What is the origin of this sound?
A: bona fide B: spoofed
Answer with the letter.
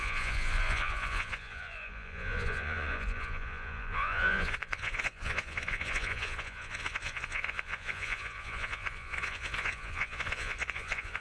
B